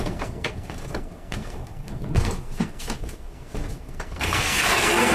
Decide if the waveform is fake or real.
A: fake